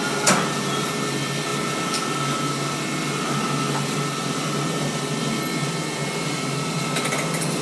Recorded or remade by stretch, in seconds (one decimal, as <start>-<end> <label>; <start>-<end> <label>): 0.0-7.6 recorded